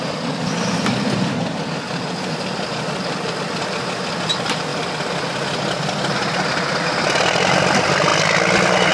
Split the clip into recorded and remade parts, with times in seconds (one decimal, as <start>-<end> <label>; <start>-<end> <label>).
0.0-4.7 remade; 4.7-5.9 recorded; 5.9-8.1 remade; 8.1-8.9 recorded